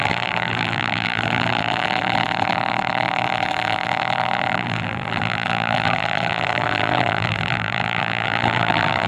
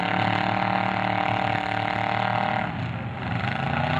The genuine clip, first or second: second